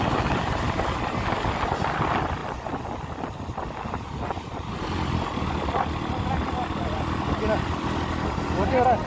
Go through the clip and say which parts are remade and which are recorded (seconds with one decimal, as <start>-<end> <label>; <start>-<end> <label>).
0.0-9.1 recorded